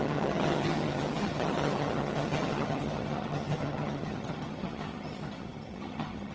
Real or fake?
fake